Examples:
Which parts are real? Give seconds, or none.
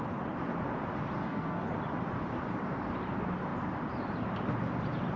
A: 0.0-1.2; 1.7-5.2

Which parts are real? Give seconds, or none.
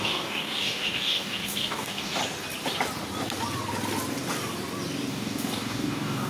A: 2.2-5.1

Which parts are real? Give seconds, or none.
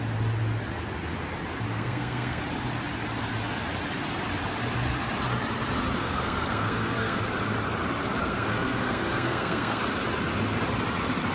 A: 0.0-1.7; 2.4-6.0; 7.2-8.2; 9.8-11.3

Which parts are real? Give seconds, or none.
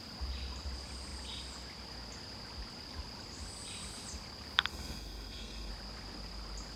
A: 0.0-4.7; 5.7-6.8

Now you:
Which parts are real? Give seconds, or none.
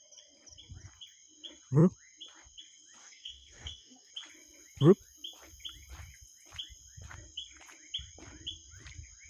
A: 0.0-3.0; 4.1-9.3